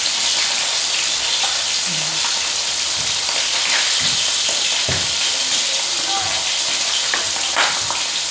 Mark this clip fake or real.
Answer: real